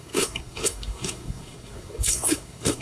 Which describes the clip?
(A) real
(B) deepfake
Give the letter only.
B